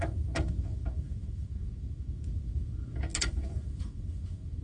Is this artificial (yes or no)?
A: yes